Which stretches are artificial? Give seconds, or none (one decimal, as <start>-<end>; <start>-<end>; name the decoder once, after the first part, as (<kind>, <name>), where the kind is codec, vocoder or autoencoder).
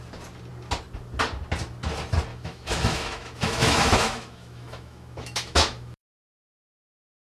2.3-6.7 (autoencoder, DAC-VAE)